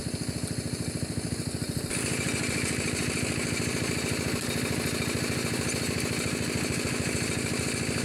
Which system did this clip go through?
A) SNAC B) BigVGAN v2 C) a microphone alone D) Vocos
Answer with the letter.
C